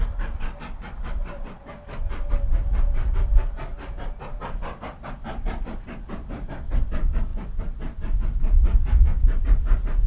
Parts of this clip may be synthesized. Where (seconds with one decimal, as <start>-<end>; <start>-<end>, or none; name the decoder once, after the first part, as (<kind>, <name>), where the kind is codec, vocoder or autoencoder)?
none